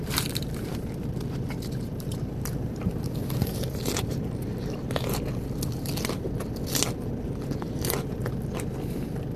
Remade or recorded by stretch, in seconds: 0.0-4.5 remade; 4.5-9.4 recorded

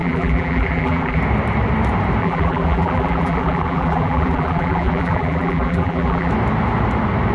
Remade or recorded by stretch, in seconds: 0.0-1.2 remade; 1.2-2.2 recorded; 2.2-6.3 remade; 6.3-7.3 recorded

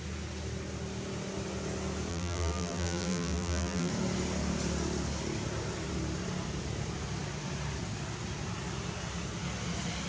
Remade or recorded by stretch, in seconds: 0.0-2.1 recorded; 2.1-3.9 remade; 3.9-10.1 recorded

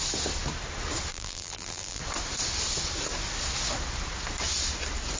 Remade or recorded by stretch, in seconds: 0.0-1.1 recorded; 1.1-2.0 remade; 2.0-5.2 recorded